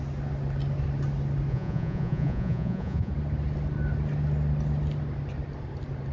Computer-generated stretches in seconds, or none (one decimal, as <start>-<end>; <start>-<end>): 1.5-3.1